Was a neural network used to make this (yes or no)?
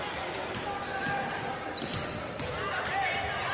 no